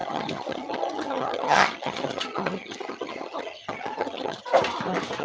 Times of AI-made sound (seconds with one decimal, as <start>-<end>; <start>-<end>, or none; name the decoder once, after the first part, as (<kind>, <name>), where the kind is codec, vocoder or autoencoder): 0.0-4.5 (vocoder, HiFi-GAN)